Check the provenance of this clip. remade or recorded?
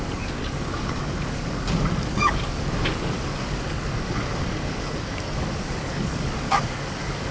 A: remade